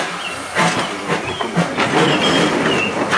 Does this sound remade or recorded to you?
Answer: recorded